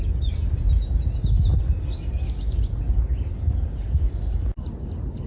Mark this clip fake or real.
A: real